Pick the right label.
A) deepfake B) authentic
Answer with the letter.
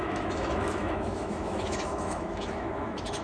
A